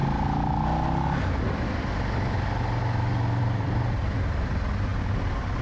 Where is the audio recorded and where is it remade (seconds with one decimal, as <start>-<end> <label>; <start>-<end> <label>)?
0.0-3.4 recorded; 3.4-5.6 remade